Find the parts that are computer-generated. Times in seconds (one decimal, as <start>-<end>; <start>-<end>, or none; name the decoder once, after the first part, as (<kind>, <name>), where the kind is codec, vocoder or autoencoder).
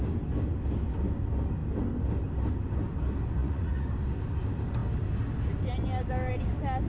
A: 3.4-3.9 (vocoder, Vocos)